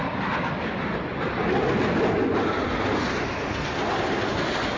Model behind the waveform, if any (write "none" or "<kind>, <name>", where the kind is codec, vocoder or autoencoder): none